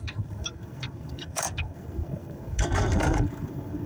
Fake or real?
fake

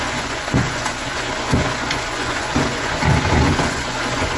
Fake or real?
fake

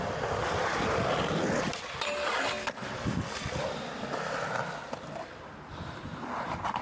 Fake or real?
fake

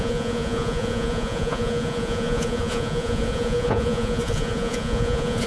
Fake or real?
fake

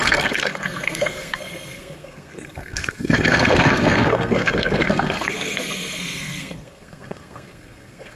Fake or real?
fake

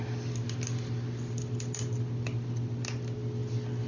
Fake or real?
real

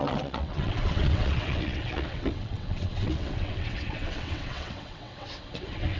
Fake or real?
fake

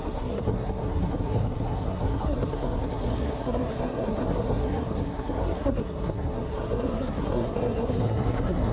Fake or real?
fake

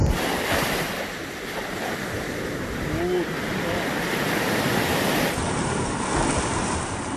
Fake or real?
real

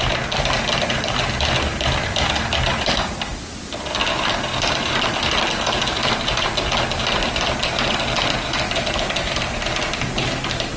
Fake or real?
real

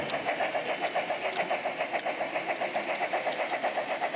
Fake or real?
real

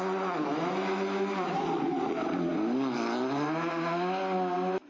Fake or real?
real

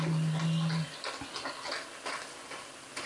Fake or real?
real